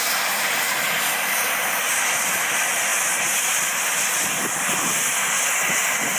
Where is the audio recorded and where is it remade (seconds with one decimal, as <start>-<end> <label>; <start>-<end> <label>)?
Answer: 0.0-6.2 recorded